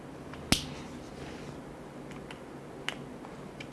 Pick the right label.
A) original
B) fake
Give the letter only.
A